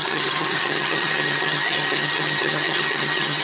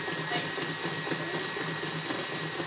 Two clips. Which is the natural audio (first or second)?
second